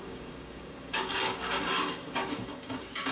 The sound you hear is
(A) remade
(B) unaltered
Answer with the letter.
A